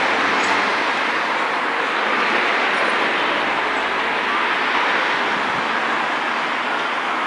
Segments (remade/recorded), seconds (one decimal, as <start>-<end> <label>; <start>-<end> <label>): 0.0-7.3 recorded